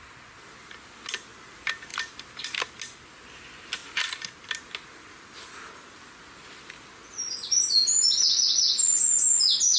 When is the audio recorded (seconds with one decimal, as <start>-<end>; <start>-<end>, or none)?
0.0-9.8